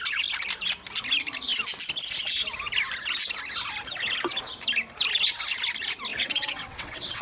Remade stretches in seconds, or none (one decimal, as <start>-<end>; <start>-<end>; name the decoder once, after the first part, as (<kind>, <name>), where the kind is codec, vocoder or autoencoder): 6.1-7.2 (vocoder, WaveNeXt)